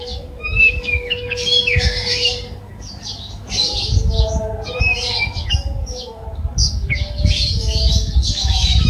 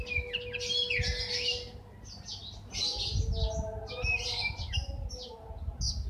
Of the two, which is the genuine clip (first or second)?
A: second